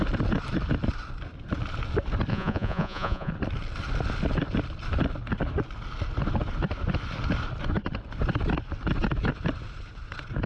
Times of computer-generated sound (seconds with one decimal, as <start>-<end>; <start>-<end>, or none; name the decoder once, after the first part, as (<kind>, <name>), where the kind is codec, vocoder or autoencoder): 2.3-3.3 (vocoder, Vocos)